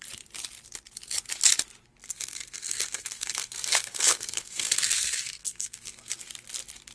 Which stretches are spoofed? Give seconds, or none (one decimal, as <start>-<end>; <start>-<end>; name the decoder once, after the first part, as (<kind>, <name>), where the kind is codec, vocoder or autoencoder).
2.0-6.1 (codec, SNAC)